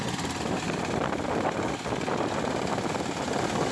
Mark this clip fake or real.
real